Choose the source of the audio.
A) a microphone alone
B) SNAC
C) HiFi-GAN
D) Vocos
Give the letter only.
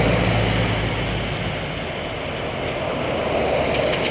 A